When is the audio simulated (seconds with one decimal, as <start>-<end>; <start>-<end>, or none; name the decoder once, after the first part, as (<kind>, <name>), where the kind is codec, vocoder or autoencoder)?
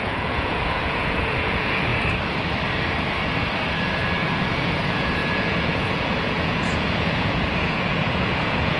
0.0-1.9 (vocoder, Vocos); 4.0-8.8